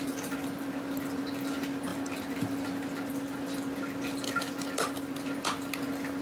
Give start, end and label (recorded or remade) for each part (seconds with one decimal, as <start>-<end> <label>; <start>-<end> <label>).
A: 0.0-6.2 recorded